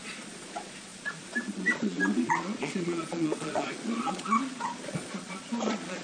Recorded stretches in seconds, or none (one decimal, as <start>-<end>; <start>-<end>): none